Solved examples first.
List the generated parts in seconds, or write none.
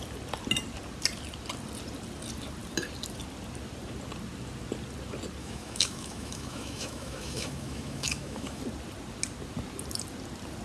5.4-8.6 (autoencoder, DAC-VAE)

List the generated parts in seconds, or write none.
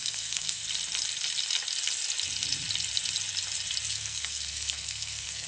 0.0-0.6 (codec, SNAC); 3.9-5.5